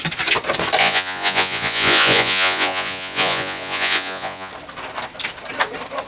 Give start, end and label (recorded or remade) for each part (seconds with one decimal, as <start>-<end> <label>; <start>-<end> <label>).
0.0-0.8 recorded; 0.8-4.5 remade; 4.5-6.1 recorded